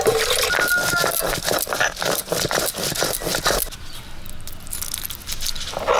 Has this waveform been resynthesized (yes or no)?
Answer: no